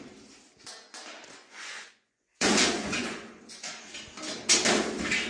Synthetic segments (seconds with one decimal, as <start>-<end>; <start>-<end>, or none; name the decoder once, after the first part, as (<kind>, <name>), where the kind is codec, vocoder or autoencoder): 1.2-3.7 (vocoder, Vocos)